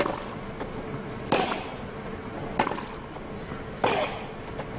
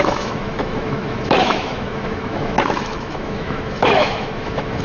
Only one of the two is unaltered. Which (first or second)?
first